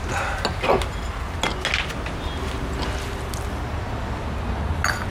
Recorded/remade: recorded